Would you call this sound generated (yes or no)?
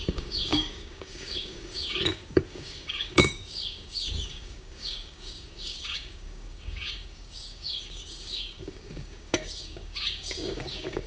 yes